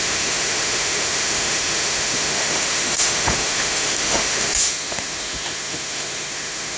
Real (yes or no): no